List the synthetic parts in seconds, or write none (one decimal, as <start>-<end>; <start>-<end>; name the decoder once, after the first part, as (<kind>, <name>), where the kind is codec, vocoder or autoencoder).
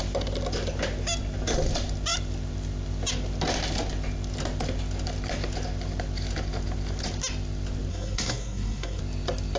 7.9-9.0 (codec, SNAC)